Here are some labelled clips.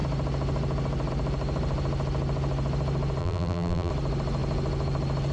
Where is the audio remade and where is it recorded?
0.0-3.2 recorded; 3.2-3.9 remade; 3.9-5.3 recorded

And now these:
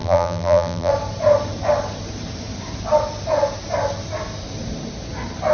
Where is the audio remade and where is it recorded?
0.0-0.9 remade; 0.9-5.5 recorded